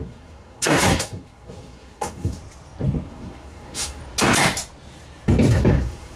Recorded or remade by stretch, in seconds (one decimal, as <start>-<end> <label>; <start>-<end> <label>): 0.0-2.4 remade; 2.4-3.1 recorded; 3.1-4.0 remade; 4.0-5.5 recorded; 5.5-6.2 remade